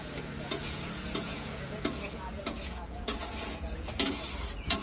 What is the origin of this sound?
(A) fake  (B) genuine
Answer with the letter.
A